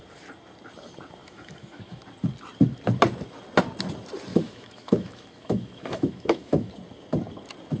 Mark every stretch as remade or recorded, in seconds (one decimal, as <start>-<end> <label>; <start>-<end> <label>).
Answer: 0.0-1.2 recorded; 1.2-2.0 remade; 2.0-4.3 recorded; 4.3-6.7 remade; 6.7-7.8 recorded